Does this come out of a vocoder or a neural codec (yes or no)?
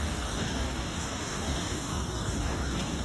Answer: yes